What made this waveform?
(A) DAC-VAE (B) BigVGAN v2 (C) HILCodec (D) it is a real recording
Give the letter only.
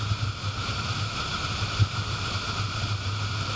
D